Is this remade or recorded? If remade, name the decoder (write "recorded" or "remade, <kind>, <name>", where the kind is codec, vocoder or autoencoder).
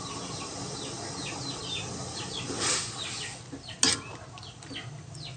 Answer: recorded